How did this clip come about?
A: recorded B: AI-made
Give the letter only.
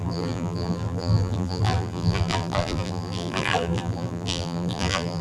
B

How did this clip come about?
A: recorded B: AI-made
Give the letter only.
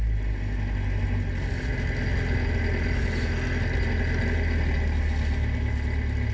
A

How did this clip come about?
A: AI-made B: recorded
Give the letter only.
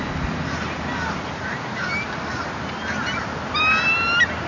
B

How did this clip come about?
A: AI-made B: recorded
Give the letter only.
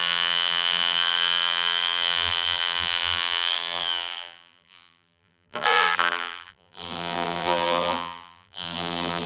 A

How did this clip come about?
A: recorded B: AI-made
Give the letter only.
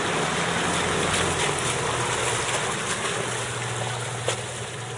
A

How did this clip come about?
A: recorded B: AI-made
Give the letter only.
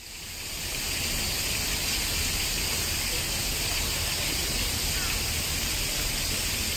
A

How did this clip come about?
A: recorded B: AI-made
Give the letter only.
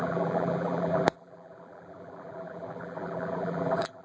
B